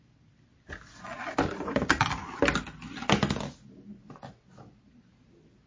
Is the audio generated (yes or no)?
no